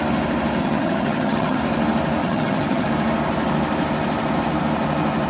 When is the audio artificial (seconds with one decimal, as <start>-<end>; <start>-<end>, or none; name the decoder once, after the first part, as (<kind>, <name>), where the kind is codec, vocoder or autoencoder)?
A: 0.6-1.6 (vocoder, HiFi-GAN); 2.2-2.9